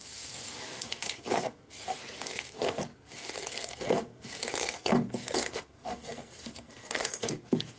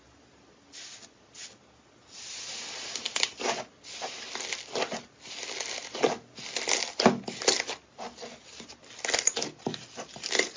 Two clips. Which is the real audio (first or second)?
second